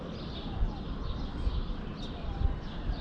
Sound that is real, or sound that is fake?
real